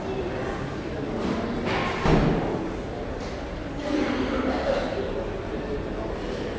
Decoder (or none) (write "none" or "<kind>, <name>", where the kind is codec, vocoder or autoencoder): none